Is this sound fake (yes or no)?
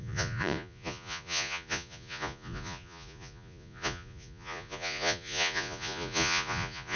yes